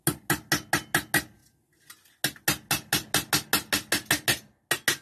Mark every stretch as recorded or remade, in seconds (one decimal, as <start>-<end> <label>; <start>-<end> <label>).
0.0-5.0 recorded

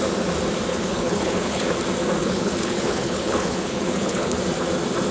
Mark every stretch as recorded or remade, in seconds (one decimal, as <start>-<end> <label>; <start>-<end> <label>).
0.0-0.7 recorded; 0.7-1.6 remade; 1.6-2.2 recorded; 2.2-4.4 remade; 4.4-5.1 recorded